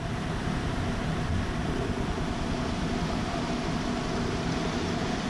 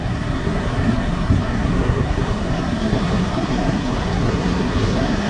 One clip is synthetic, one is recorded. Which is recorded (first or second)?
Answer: first